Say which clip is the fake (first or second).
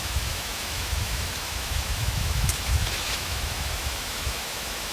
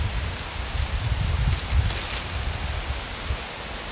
first